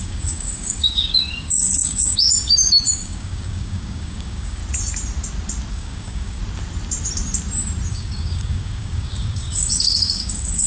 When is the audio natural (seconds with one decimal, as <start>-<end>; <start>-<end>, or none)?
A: 4.6-5.7; 6.4-7.9